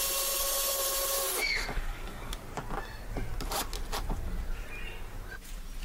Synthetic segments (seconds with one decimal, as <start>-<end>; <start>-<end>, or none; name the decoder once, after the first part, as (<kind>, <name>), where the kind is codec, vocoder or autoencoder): 1.3-2.3 (codec, DAC)